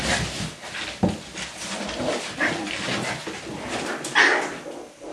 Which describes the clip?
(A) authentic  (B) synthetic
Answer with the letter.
A